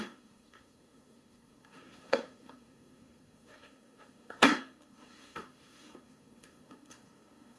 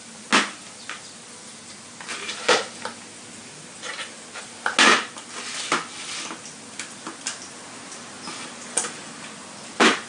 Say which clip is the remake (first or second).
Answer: first